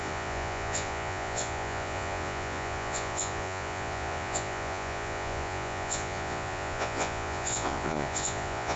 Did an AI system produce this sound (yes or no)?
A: yes